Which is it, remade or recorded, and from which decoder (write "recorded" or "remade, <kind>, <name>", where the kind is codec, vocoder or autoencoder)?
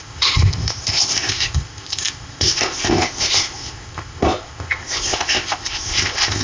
remade, codec, ZipCodec